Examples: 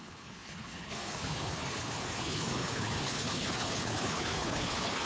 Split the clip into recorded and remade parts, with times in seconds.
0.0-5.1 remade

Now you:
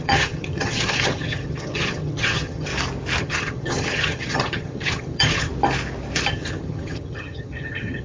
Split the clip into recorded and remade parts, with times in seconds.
0.0-2.7 remade; 2.7-3.2 recorded; 3.2-5.5 remade; 5.5-6.3 recorded; 6.3-8.0 remade

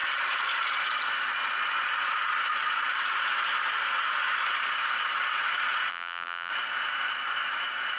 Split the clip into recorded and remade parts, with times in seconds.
0.0-5.9 recorded; 5.9-6.5 remade; 6.5-8.0 recorded

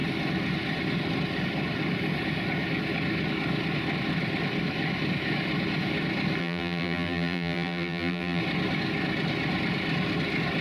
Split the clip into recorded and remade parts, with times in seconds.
0.0-6.4 recorded; 6.4-8.4 remade; 8.4-10.6 recorded